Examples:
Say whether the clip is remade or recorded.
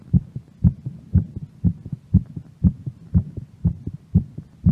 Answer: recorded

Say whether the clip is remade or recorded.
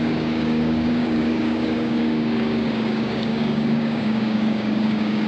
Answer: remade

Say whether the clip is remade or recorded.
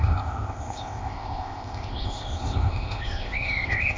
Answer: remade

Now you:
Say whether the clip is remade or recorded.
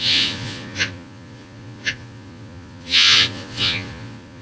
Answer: remade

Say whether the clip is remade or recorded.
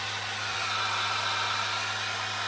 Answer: recorded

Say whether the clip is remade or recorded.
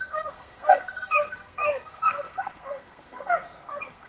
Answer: remade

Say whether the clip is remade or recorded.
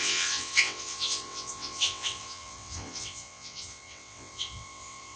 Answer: remade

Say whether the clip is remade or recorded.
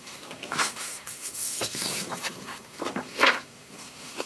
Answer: remade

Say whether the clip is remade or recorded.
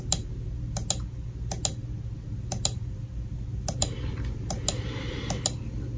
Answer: recorded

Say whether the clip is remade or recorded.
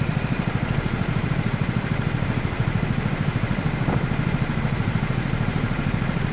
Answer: remade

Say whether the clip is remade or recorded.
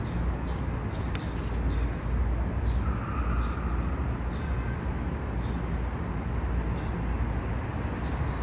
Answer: recorded